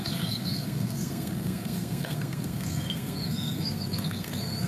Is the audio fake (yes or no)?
yes